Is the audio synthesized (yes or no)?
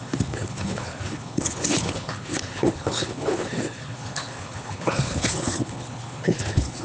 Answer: yes